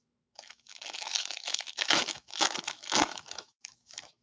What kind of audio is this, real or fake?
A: fake